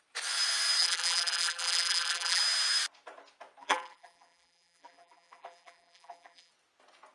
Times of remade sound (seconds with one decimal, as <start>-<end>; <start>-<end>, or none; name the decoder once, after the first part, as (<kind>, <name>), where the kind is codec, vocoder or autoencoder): 0.8-2.4 (vocoder, BigVGAN v2); 3.6-6.5